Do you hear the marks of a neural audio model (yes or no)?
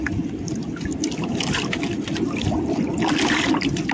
no